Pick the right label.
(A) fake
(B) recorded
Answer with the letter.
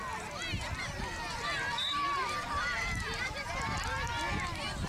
A